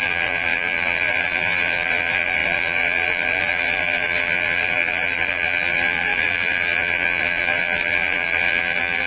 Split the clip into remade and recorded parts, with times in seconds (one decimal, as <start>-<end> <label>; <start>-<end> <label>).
0.0-9.1 remade